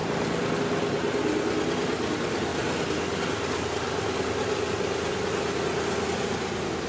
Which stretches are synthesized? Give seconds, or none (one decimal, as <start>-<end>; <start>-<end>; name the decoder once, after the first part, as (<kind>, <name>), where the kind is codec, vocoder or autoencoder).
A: none